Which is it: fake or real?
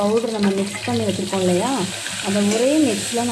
real